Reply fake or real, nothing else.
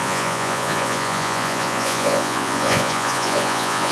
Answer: fake